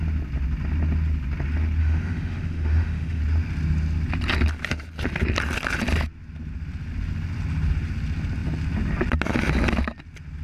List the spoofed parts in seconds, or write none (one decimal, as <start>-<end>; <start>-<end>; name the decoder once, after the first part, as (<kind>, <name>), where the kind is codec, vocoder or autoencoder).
1.8-3.2 (autoencoder, DAC-VAE)